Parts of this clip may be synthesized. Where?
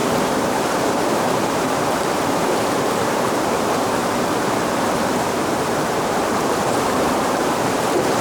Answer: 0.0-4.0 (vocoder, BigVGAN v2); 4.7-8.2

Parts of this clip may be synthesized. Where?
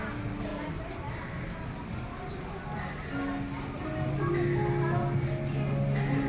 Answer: none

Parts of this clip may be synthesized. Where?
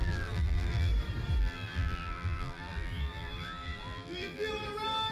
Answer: 0.0-0.9 (vocoder, BigVGAN v2); 1.4-4.5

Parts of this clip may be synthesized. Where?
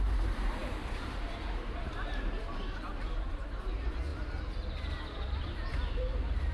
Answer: 0.0-4.1 (vocoder, BigVGAN v2); 5.3-6.5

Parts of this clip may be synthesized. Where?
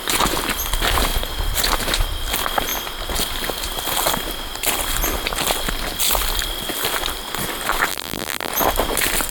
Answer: 7.9-8.5 (vocoder, BigVGAN v2)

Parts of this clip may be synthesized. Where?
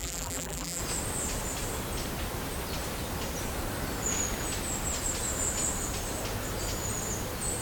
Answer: 0.0-0.8 (vocoder, BigVGAN v2)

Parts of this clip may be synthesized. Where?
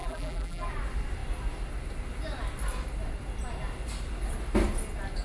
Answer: 0.0-0.7 (vocoder, BigVGAN v2)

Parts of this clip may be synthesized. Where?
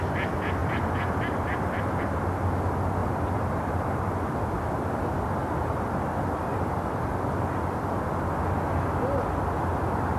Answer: 0.6-1.9 (vocoder, BigVGAN v2); 3.0-4.6